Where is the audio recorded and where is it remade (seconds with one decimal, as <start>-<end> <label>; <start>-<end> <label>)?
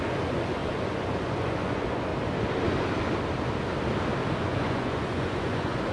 0.0-2.1 remade; 2.1-4.4 recorded; 4.4-5.9 remade